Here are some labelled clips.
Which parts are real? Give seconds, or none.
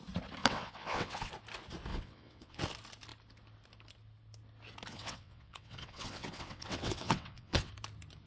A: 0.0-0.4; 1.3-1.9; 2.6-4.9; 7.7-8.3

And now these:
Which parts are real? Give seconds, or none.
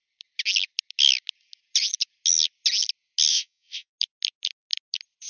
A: 0.0-3.3; 3.9-5.3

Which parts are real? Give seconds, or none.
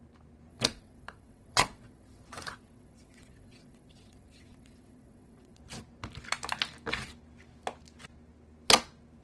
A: 0.0-0.5; 5.6-9.2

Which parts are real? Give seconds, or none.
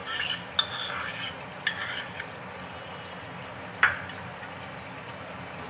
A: 0.0-5.7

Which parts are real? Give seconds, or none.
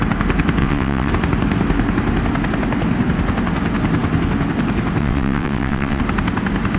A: 0.0-0.6; 1.1-5.0; 6.0-6.8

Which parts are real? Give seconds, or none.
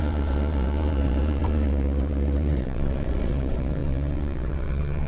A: none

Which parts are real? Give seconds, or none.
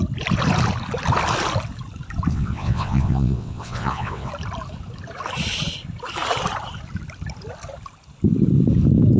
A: 0.0-2.3; 4.3-9.2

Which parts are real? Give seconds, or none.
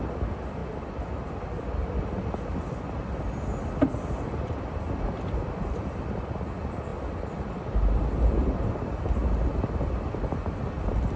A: 0.0-11.2